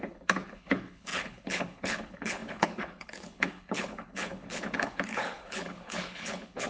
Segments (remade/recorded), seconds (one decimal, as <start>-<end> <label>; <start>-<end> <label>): 0.0-6.7 remade